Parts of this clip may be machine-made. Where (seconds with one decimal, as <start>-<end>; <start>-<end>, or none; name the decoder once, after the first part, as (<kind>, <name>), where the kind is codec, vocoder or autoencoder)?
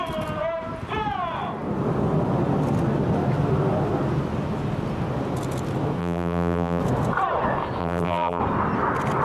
6.0-6.8 (vocoder, BigVGAN v2); 7.8-8.4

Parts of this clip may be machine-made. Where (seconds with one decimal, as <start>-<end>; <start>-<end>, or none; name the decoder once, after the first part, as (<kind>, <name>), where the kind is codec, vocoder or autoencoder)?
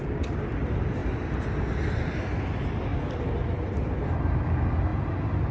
none